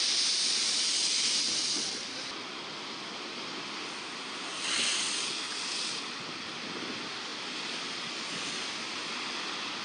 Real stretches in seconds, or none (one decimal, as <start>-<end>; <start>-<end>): 0.0-9.8